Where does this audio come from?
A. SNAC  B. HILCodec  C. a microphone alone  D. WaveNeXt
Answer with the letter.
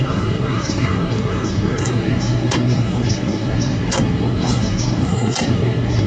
A